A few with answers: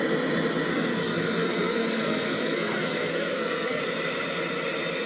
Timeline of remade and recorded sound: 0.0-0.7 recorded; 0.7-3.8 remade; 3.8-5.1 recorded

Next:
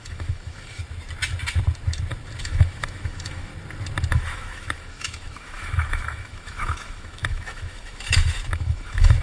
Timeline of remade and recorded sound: 0.0-0.8 remade; 0.8-2.4 recorded; 2.4-3.5 remade; 3.5-4.1 recorded; 4.1-9.2 remade